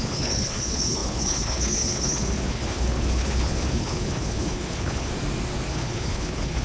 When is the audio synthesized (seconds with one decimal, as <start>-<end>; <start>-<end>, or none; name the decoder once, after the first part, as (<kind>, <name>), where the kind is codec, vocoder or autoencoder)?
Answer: 0.0-5.1 (codec, HILCodec); 5.7-6.6